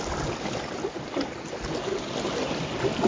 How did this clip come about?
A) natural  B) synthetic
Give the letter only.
A